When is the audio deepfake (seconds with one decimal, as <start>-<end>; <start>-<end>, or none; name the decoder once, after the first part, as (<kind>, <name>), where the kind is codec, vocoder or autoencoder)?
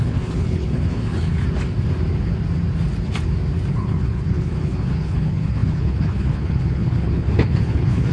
0.0-1.4 (codec, HILCodec); 3.7-8.1